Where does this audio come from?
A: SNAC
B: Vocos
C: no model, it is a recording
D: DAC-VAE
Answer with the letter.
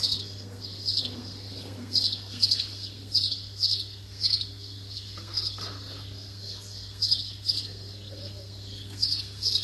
A